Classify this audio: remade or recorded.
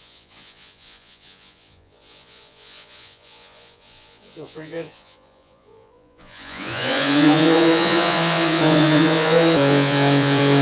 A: remade